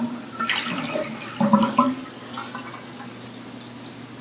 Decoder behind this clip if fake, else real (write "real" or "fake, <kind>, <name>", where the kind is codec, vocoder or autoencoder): real